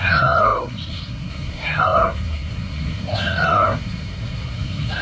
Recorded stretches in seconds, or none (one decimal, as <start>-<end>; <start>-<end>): none